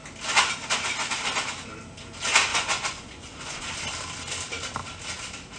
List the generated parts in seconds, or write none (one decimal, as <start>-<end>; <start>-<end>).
2.5-3.7